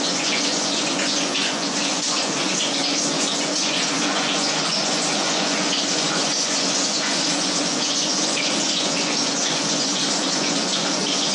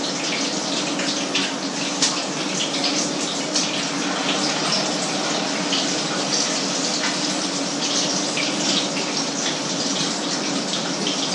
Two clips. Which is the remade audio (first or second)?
first